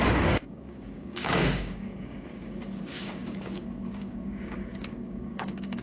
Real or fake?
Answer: fake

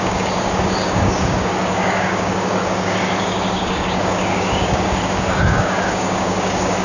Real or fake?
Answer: fake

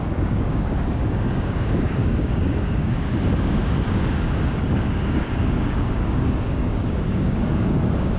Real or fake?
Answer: fake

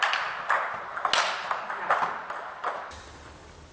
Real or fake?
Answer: real